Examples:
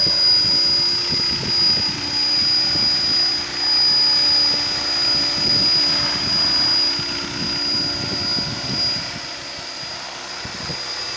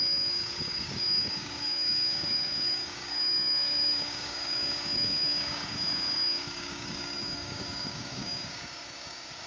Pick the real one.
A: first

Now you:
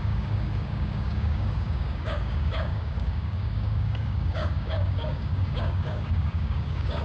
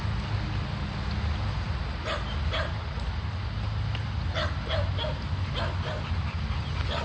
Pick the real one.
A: second